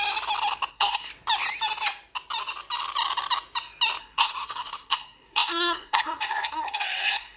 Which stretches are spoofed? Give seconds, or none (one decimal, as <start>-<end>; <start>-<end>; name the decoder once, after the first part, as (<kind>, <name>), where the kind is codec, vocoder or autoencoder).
0.7-1.1 (codec, SNAC); 4.0-7.4